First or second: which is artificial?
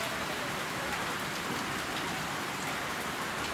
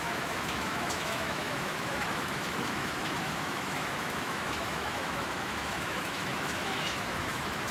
second